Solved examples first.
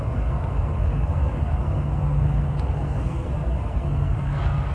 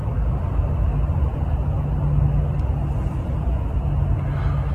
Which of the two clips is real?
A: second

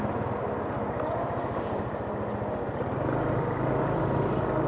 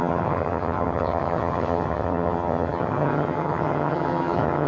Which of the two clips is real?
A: first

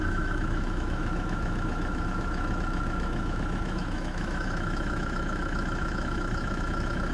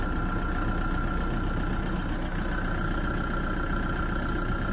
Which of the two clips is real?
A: second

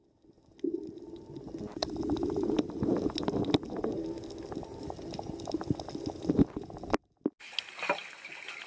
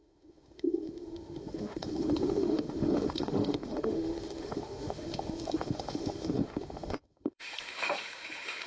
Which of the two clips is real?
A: first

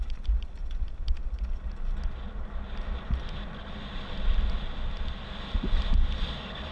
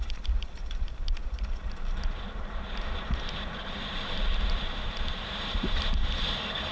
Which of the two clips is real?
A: first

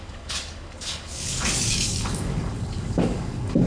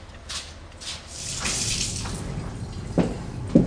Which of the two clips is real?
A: second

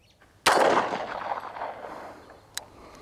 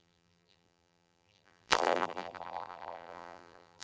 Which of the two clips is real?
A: first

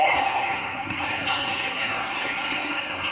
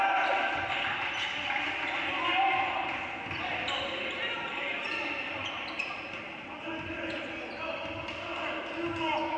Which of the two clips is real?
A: second